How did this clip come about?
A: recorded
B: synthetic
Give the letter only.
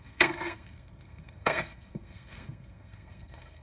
B